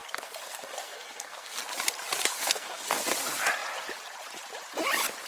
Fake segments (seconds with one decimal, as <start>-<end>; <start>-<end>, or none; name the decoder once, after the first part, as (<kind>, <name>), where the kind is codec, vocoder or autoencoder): 0.0-1.6 (codec, SNAC); 2.3-3.0